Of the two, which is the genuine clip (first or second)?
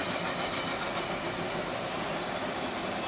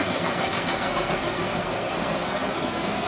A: first